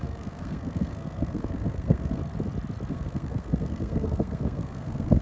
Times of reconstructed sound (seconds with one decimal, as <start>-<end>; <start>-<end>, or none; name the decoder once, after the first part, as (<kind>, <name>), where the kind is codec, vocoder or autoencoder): 0.0-2.2 (codec, SNAC); 2.9-5.2